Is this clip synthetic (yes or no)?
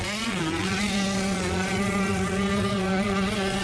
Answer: yes